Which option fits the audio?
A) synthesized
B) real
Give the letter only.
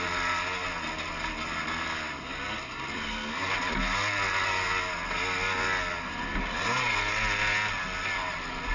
B